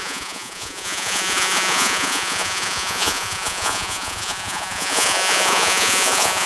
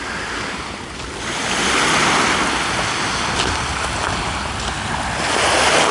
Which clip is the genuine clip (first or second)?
second